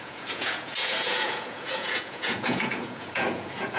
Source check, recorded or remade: remade